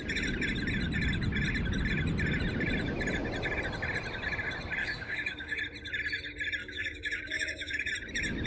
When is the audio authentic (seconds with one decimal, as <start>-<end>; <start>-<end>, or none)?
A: 0.0-4.8; 5.6-6.6; 7.9-8.5